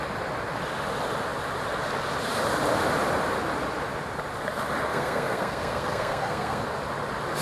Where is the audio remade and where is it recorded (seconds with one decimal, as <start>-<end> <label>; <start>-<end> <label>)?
0.0-4.9 recorded; 4.9-6.6 remade; 6.6-7.4 recorded